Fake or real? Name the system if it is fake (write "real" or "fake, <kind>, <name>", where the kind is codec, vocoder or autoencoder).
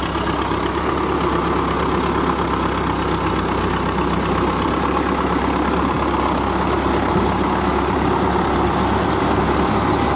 real